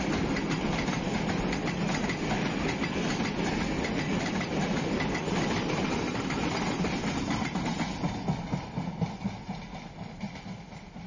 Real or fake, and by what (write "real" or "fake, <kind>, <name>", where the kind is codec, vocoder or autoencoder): real